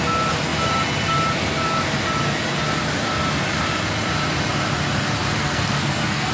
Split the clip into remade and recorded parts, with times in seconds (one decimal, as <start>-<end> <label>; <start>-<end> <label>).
0.0-5.4 recorded; 5.4-6.3 remade